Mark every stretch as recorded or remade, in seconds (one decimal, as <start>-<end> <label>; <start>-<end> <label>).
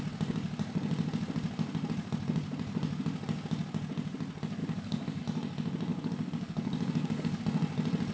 0.0-4.6 recorded; 4.6-5.2 remade; 5.2-5.9 recorded; 5.9-7.4 remade; 7.4-8.1 recorded